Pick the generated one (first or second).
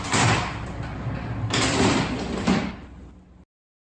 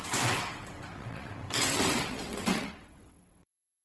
second